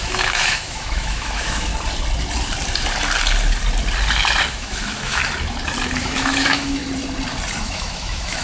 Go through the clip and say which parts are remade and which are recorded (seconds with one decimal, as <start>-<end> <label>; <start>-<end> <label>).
0.0-1.7 remade; 1.7-4.5 recorded; 4.5-5.2 remade; 5.2-6.0 recorded; 6.0-6.8 remade; 6.8-7.6 recorded; 7.6-8.4 remade